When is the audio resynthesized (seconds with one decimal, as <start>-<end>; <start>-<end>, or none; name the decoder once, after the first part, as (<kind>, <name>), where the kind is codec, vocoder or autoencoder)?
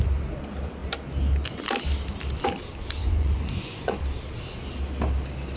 3.0-4.0 (vocoder, Vocos)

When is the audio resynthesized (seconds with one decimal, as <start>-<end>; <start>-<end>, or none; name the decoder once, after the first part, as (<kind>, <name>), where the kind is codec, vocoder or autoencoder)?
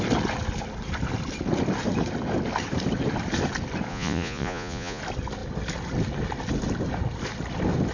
3.9-5.0 (vocoder, Vocos)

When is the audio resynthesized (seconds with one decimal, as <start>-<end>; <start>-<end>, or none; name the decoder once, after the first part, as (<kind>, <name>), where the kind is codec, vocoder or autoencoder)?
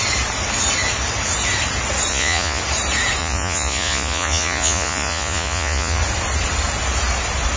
2.1-2.6 (vocoder, Vocos); 3.2-6.0